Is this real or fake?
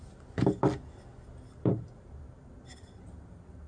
real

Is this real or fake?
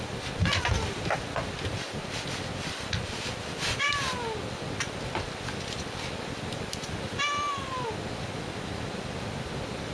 real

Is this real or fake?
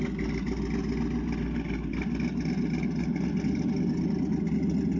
real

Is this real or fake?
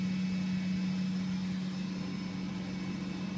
real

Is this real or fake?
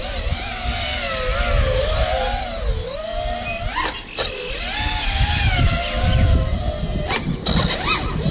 real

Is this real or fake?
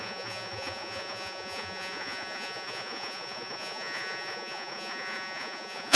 fake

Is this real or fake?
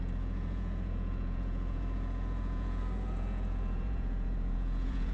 fake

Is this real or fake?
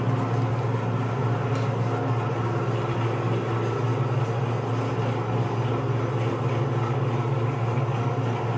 real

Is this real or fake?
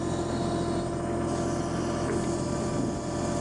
real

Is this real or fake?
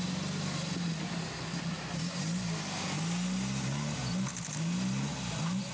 real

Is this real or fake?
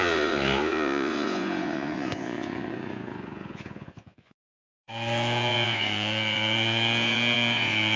fake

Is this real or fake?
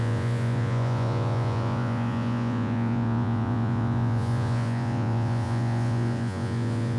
fake